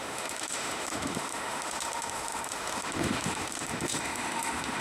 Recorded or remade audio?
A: remade